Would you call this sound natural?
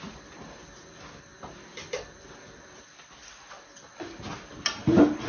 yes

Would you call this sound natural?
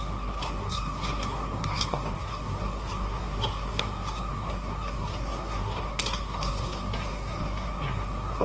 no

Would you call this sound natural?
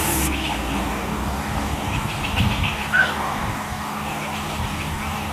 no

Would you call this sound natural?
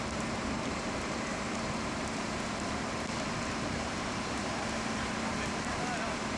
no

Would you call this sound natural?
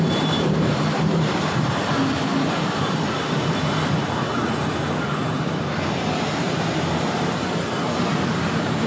no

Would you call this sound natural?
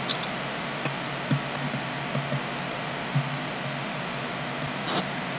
yes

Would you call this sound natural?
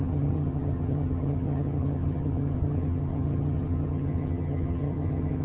no